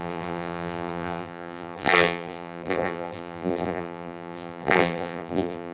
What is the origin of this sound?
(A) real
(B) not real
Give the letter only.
B